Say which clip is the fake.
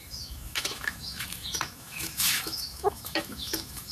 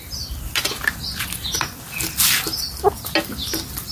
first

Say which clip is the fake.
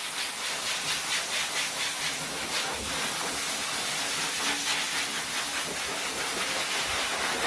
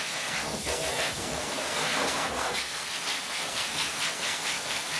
second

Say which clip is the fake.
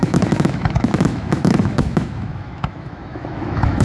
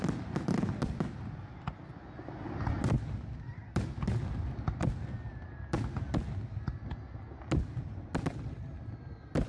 first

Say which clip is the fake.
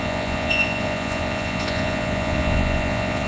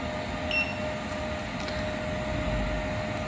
first